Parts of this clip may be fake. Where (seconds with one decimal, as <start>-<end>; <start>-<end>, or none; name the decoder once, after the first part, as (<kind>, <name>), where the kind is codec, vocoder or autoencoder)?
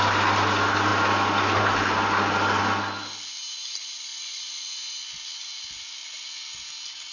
4.1-4.9 (vocoder, Vocos)